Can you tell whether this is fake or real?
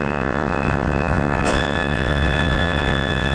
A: fake